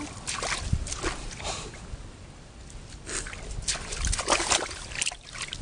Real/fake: real